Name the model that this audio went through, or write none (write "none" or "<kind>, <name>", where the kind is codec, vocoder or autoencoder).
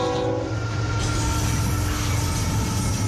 none